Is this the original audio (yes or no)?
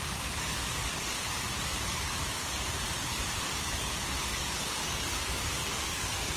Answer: no